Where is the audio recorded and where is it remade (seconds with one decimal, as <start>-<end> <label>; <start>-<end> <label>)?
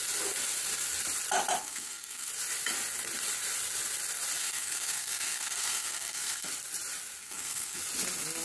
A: 0.0-1.6 recorded; 1.6-2.3 remade; 2.3-4.4 recorded; 4.4-6.5 remade; 6.5-7.2 recorded; 7.2-7.8 remade; 7.8-8.4 recorded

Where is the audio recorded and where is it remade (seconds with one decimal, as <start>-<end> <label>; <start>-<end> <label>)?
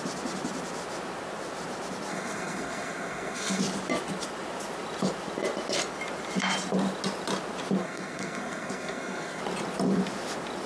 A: 0.0-2.1 recorded; 2.1-3.6 remade; 3.6-7.8 recorded; 7.8-9.4 remade; 9.4-10.7 recorded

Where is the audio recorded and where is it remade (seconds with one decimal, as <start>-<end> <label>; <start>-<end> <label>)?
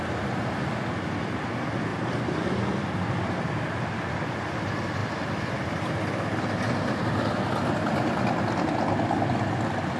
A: 0.0-1.9 recorded; 1.9-3.2 remade; 3.2-10.0 recorded